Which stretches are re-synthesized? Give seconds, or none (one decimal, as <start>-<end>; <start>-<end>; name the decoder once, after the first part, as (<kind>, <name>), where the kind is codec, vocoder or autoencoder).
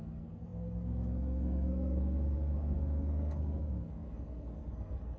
0.0-5.2 (codec, SNAC)